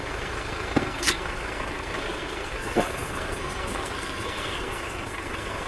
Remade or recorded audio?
remade